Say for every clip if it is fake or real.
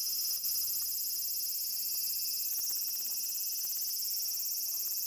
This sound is real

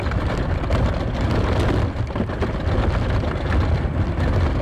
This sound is real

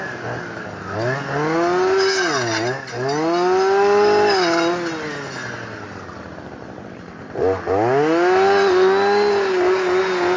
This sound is real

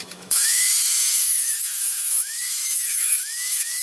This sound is fake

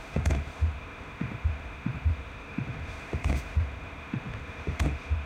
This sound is fake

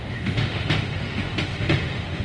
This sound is fake